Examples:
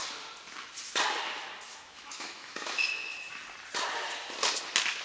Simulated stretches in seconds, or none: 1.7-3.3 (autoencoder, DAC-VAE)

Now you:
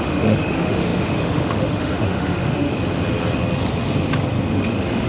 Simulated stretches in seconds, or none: 0.0-2.7 (autoencoder, DAC-VAE); 4.5-5.1

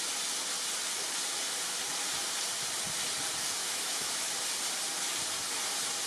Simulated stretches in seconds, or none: 3.6-4.3 (autoencoder, DAC-VAE)